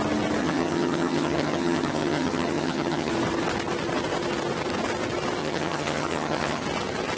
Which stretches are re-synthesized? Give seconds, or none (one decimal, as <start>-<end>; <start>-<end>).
0.4-3.1; 5.4-6.6